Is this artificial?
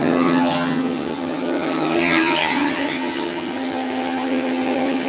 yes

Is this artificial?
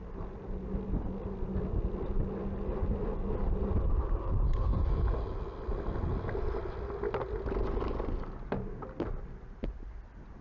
no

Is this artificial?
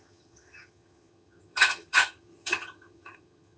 yes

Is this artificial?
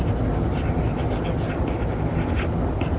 no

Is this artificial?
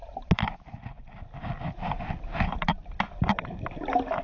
no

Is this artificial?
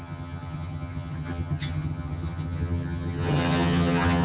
yes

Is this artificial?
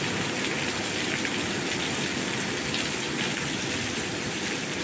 no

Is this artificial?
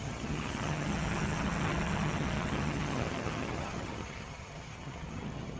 yes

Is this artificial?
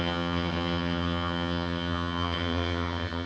yes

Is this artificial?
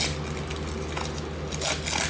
no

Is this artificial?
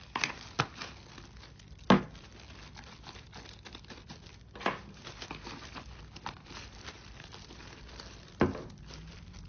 no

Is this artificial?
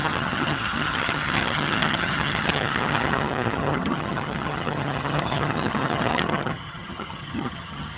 yes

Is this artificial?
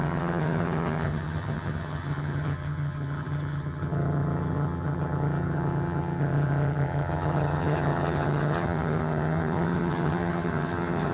yes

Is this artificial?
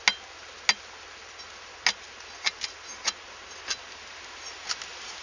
no